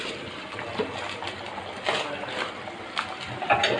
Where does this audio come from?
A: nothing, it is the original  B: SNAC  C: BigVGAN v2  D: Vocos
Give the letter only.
A